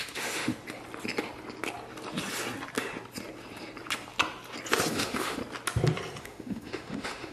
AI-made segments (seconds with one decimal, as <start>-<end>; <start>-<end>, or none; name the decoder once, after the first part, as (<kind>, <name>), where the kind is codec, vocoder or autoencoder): 0.0-0.5 (autoencoder, DAC-VAE); 4.9-5.4; 6.2-7.3